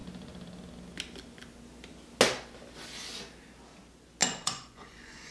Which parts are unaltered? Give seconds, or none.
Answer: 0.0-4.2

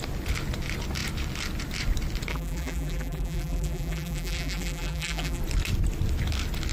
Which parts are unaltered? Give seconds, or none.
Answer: 0.0-2.3; 5.4-6.7

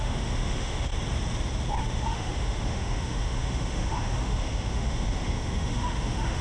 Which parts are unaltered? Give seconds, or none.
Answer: 0.9-1.8

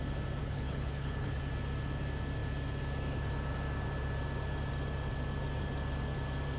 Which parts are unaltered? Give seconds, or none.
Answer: 0.0-0.4; 1.4-6.6

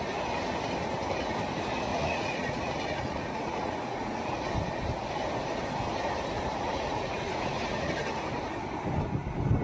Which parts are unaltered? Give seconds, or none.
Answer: 0.0-1.9; 4.5-6.7; 7.9-9.6